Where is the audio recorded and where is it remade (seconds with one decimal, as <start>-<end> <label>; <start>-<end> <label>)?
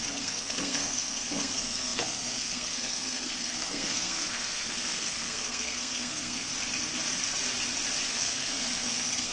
0.0-6.5 remade; 6.5-8.1 recorded; 8.1-9.3 remade